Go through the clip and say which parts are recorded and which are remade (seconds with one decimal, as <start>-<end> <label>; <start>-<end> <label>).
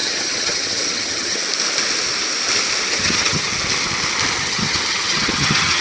0.0-1.4 remade; 1.4-2.9 recorded; 2.9-3.5 remade; 3.5-4.4 recorded; 4.4-5.8 remade